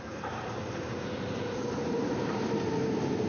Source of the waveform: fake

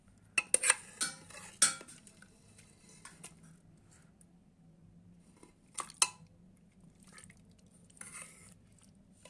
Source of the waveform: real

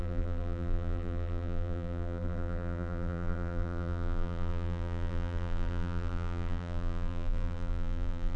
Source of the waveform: fake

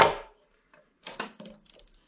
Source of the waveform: fake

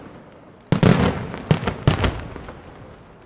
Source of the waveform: real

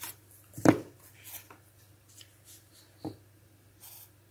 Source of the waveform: real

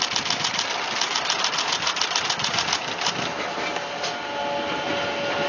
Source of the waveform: real